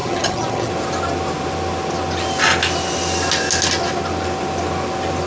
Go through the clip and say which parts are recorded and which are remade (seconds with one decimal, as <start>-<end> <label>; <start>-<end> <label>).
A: 0.0-0.7 remade; 0.7-5.3 recorded